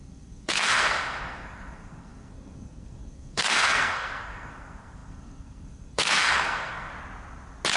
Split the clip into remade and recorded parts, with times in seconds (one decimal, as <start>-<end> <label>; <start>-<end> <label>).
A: 0.0-6.9 remade; 6.9-7.8 recorded